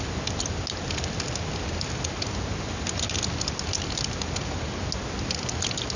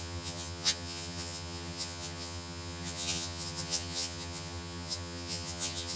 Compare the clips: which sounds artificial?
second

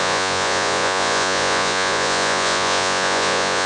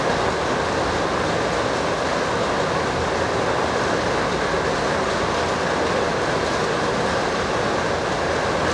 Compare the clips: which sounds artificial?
first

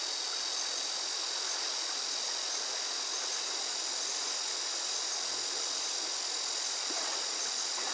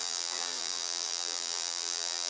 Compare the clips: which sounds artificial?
second